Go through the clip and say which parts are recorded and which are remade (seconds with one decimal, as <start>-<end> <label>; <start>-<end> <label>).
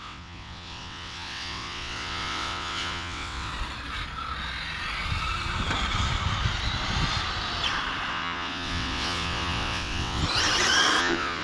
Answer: 0.0-3.5 remade; 3.5-8.1 recorded; 8.1-10.2 remade; 10.2-11.0 recorded; 11.0-11.4 remade